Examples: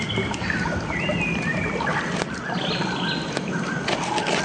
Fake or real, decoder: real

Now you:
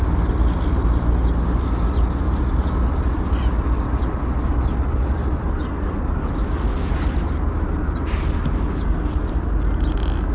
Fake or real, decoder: real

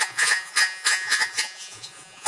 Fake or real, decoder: fake, vocoder, Vocos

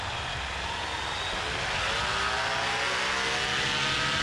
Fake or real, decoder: real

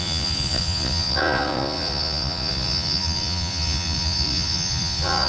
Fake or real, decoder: fake, vocoder, Vocos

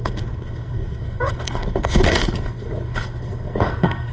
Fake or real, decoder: fake, codec, SNAC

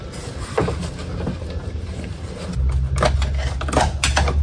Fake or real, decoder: real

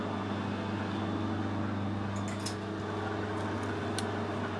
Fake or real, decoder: real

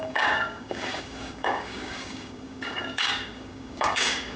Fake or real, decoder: fake, codec, DAC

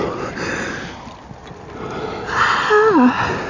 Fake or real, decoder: real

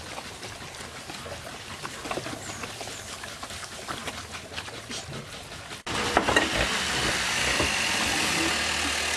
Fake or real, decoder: real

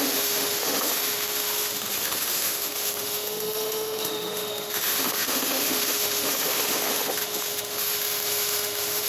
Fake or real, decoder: fake, autoencoder, DAC-VAE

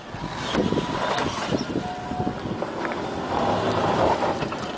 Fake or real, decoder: real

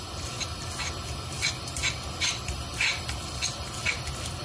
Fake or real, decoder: real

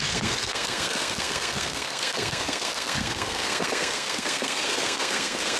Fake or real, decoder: fake, codec, SNAC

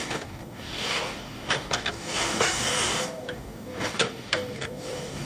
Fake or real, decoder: fake, codec, DAC